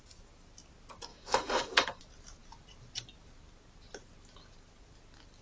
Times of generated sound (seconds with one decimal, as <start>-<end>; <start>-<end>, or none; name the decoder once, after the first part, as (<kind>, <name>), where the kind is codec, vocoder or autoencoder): 1.1-2.0 (codec, DAC)